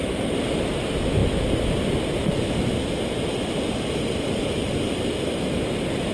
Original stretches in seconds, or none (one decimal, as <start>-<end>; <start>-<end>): 0.0-6.1